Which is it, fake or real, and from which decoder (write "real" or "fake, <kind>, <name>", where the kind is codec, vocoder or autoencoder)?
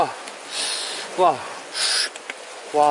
fake, vocoder, Vocos